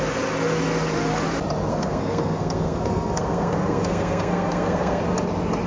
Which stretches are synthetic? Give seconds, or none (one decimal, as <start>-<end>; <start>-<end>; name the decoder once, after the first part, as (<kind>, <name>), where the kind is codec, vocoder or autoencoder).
1.7-5.0 (codec, SNAC)